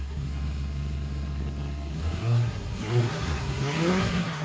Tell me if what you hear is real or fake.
fake